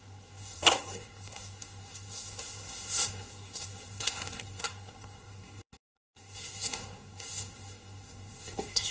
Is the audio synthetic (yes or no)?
yes